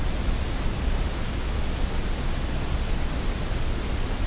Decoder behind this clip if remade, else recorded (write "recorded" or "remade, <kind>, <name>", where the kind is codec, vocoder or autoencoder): recorded